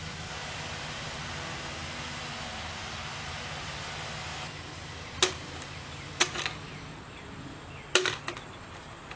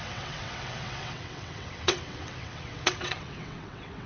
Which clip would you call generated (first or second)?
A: second